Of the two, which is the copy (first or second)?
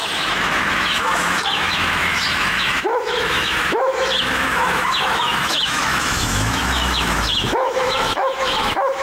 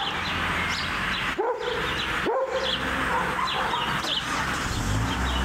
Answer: first